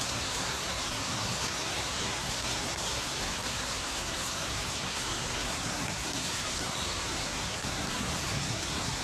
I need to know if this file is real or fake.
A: fake